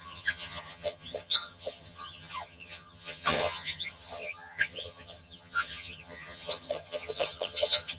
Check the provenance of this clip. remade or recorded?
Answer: remade